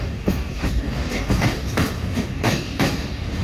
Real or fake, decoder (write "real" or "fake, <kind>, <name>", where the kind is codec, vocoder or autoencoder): fake, codec, DAC